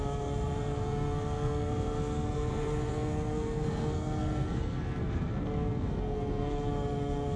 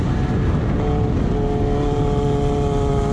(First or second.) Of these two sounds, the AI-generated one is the first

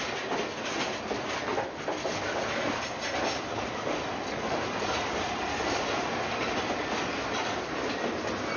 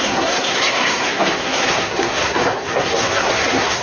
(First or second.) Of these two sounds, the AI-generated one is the second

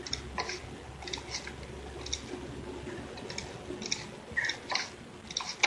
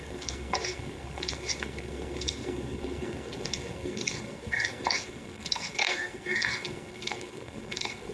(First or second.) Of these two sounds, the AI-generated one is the second